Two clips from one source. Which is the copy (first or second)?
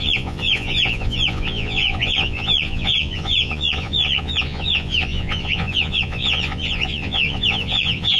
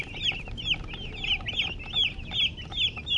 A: first